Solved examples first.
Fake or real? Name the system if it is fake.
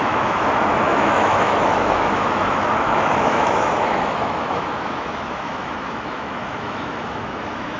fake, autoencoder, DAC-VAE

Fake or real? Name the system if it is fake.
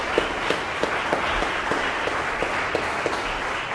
real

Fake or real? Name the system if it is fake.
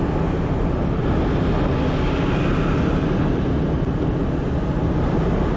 real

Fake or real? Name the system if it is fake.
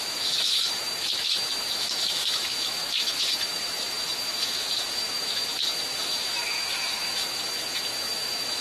fake, autoencoder, DAC-VAE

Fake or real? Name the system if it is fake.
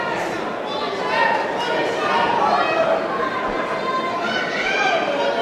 real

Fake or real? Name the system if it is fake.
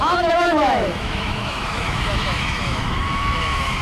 fake, autoencoder, DAC-VAE